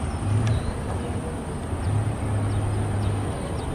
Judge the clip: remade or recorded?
recorded